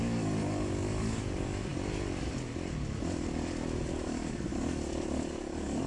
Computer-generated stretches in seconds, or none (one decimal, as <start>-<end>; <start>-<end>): 0.0-1.7; 3.9-5.9